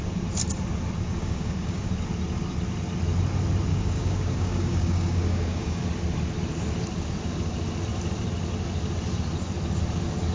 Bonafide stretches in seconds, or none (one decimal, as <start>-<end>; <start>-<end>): 0.0-1.1; 1.9-3.7; 5.8-10.3

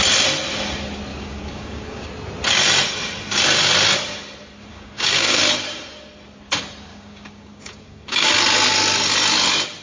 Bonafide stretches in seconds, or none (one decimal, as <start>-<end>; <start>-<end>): 0.0-1.1; 2.1-4.7; 5.4-6.9; 8.3-9.8